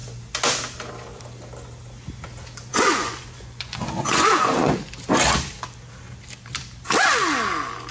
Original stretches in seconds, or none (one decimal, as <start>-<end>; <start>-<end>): 0.0-2.7; 4.9-7.9

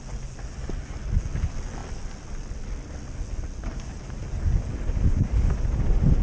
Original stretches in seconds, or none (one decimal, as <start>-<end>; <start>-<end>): 0.0-6.2

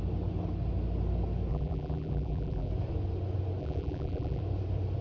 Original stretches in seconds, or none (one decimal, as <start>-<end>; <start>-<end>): 0.0-1.5; 2.7-3.6; 4.4-5.0

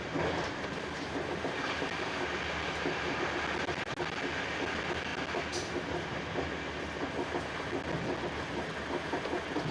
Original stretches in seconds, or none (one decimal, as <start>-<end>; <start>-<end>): 0.0-9.7

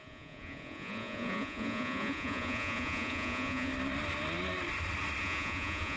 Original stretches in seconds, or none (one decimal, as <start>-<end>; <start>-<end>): 3.7-5.2